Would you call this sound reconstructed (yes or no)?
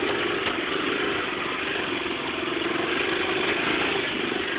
no